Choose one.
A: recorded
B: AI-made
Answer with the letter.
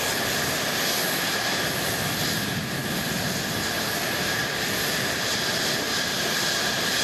B